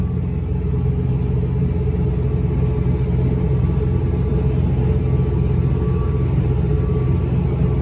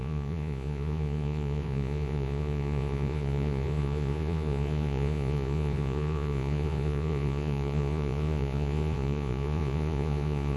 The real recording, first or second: first